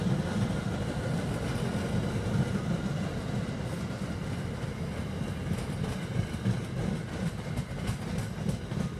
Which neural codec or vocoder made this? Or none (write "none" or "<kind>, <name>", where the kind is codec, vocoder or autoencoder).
none